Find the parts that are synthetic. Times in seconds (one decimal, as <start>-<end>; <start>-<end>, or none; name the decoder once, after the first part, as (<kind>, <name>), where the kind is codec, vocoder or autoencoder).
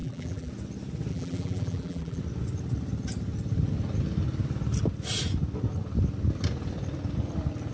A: 0.0-0.5 (vocoder, BigVGAN v2); 1.1-2.2